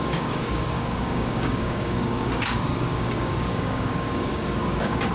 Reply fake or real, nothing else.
fake